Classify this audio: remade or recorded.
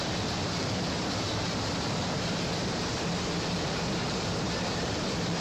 remade